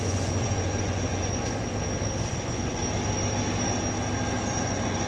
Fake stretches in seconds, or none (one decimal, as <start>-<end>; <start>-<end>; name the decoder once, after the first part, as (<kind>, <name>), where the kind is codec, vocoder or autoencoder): 0.0-1.6 (vocoder, Vocos); 2.3-2.8; 4.5-5.1